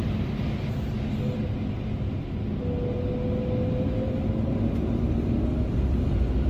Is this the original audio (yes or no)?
yes